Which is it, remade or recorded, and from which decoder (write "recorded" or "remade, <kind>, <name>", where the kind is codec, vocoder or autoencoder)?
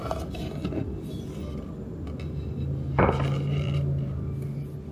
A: recorded